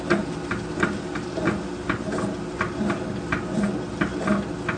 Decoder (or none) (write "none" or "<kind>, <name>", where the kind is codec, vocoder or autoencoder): none